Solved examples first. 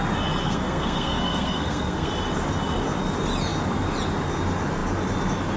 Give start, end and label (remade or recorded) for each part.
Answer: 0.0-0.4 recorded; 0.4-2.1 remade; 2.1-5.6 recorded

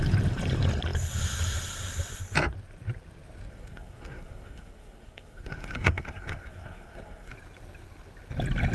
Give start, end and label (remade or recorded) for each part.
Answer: 0.0-3.5 recorded; 3.5-7.3 remade; 7.3-8.7 recorded

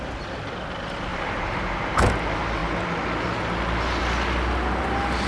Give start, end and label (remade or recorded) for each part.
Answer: 0.0-1.1 recorded; 1.1-2.1 remade; 2.1-5.3 recorded